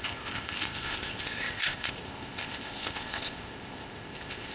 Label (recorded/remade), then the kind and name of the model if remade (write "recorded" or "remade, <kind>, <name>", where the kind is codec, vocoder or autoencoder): remade, codec, ZipCodec